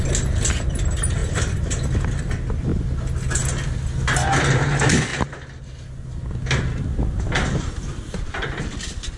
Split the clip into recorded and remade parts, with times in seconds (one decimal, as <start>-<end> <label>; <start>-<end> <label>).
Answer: 0.0-9.2 recorded